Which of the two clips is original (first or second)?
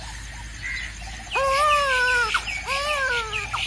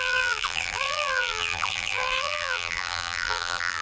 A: first